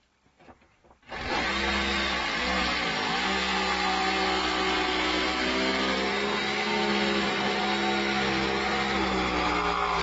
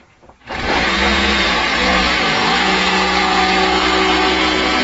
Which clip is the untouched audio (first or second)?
first